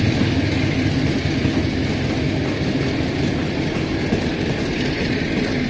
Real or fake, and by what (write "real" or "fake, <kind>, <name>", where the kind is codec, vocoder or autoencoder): real